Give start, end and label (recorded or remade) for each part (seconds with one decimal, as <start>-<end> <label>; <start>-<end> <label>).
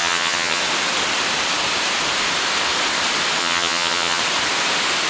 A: 0.0-0.6 remade; 0.6-3.4 recorded; 3.4-4.2 remade; 4.2-5.1 recorded